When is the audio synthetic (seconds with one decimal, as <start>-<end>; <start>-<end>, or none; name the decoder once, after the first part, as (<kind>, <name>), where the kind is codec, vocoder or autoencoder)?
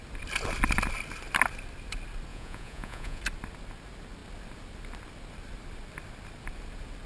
2.3-3.2 (vocoder, Vocos)